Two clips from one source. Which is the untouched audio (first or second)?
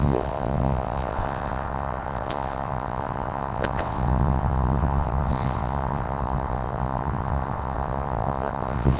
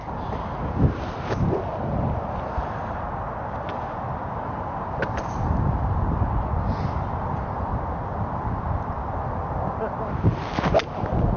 second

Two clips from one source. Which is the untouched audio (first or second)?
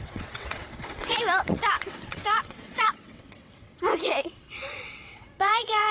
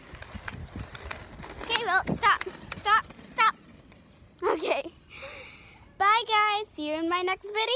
second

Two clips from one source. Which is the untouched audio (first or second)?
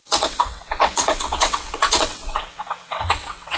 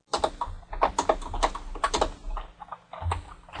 second